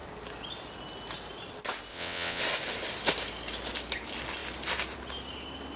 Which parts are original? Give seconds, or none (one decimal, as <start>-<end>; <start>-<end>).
0.0-1.9; 2.4-5.8